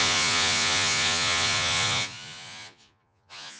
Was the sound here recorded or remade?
remade